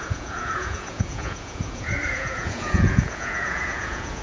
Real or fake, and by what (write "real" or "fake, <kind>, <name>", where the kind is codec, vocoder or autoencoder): fake, vocoder, Vocos